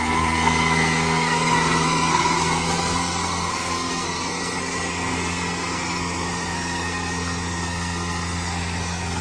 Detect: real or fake fake